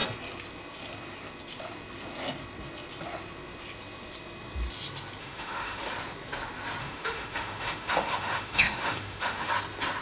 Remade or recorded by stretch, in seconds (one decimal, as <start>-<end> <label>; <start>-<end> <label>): 0.0-5.2 recorded; 5.2-5.9 remade; 5.9-6.8 recorded; 6.8-9.5 remade; 9.5-10.0 recorded

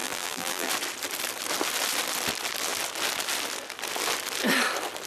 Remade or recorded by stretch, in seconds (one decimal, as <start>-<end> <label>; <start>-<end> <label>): 0.0-0.7 remade; 0.7-5.1 recorded

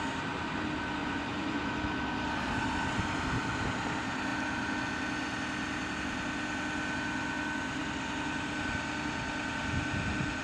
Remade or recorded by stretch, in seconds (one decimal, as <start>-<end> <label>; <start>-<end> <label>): 0.0-1.0 recorded; 1.0-1.7 remade; 1.7-10.4 recorded

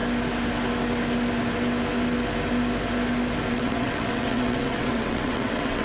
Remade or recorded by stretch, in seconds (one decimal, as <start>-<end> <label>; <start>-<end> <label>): 0.0-3.5 recorded; 3.5-5.8 remade

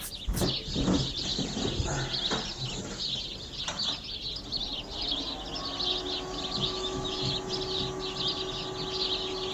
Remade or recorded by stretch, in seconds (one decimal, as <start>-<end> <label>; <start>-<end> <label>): 0.0-6.6 recorded; 6.6-7.3 remade; 7.3-9.5 recorded

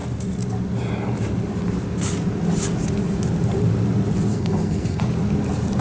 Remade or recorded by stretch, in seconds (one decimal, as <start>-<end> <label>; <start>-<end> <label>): 0.0-4.3 recorded; 4.3-5.0 remade; 5.0-5.8 recorded

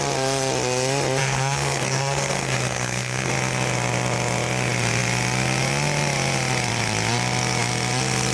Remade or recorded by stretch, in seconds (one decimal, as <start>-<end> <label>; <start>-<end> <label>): 0.0-1.2 recorded; 1.2-3.3 remade; 3.3-8.3 recorded

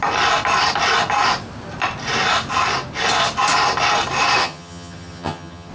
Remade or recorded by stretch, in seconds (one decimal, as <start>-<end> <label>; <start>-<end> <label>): 0.0-4.4 recorded; 4.4-5.7 remade